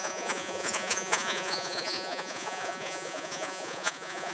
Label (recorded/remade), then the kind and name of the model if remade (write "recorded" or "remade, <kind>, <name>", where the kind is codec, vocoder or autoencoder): remade, vocoder, Vocos